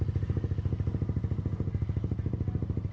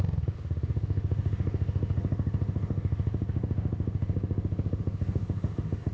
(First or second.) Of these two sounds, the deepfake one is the second